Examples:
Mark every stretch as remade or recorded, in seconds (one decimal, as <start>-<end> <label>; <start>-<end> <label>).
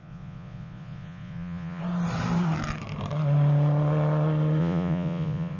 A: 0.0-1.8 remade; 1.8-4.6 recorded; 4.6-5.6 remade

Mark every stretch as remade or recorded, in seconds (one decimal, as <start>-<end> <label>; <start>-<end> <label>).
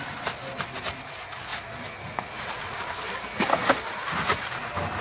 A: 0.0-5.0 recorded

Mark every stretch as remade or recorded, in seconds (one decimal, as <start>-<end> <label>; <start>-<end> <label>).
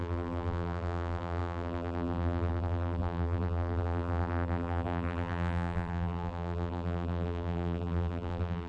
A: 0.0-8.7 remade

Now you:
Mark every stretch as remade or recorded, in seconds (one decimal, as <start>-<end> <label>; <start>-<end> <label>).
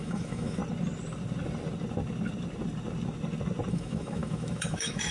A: 0.0-0.6 remade; 0.6-3.7 recorded; 3.7-5.1 remade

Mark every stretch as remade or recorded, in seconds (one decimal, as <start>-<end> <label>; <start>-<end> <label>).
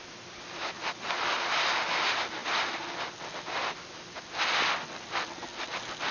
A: 0.0-6.1 recorded